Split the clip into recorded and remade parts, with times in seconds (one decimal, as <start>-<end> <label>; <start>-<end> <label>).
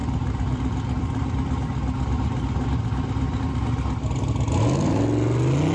0.0-5.7 recorded